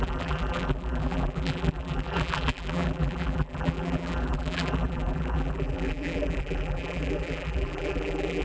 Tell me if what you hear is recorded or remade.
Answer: remade